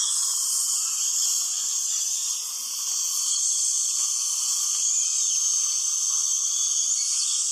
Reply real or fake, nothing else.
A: real